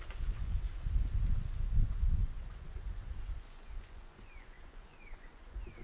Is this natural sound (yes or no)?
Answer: no